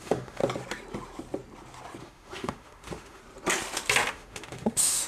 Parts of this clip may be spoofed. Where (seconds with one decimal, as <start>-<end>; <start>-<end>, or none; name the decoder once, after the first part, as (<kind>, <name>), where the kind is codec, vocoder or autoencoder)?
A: 0.0-0.4 (autoencoder, DAC-VAE); 2.0-3.2; 4.1-5.1